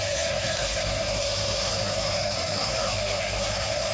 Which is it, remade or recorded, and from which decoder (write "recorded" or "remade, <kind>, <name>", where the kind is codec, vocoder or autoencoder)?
remade, codec, SNAC